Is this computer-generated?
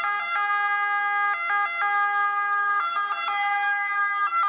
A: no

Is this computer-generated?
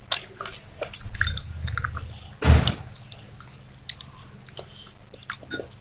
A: no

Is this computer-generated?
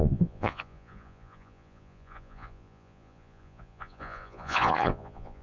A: yes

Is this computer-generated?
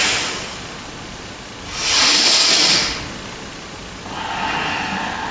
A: no